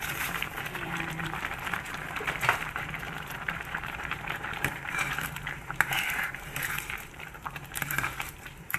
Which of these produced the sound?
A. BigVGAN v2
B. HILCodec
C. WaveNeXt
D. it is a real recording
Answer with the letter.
A